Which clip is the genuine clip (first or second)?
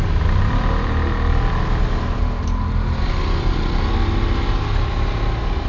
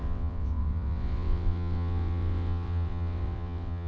first